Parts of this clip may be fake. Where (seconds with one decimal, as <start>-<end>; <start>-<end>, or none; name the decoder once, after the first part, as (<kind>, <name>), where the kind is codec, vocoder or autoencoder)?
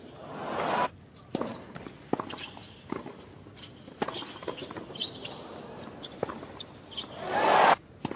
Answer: none